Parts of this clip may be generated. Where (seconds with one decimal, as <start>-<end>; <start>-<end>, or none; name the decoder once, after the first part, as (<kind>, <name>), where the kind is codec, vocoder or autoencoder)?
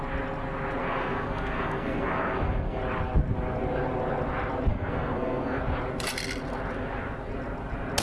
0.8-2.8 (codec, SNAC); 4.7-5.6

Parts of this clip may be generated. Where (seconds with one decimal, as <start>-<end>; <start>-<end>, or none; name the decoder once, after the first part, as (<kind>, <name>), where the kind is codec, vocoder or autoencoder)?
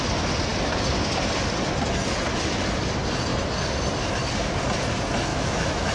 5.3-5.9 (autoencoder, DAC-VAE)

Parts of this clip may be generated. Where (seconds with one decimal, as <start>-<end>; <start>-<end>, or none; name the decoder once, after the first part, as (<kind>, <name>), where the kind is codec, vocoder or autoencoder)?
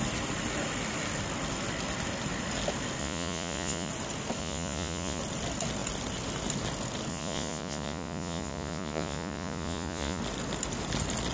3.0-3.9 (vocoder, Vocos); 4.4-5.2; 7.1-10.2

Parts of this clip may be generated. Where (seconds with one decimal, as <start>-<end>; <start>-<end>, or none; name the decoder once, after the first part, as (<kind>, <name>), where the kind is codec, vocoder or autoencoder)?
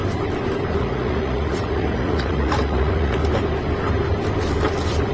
0.8-3.2 (vocoder, Vocos)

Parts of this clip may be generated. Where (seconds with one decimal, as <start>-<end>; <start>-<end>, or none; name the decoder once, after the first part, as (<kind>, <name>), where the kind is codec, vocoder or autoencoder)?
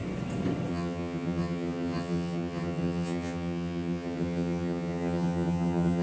0.7-6.0 (vocoder, HiFi-GAN)